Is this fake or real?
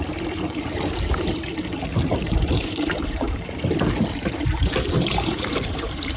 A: fake